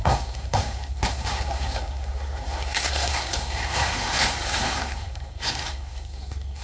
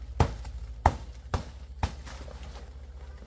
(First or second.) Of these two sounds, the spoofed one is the first